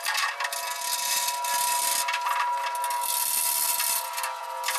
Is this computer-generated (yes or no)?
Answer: no